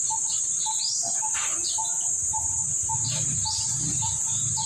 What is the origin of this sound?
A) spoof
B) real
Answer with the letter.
A